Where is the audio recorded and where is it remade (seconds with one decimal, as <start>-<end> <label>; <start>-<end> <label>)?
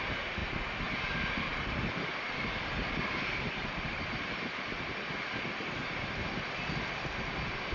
0.0-1.5 recorded; 1.5-4.9 remade; 4.9-7.7 recorded